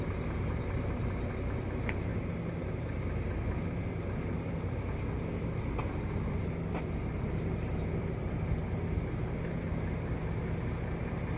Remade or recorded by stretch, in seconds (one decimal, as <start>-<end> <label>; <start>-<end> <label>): 0.0-11.4 recorded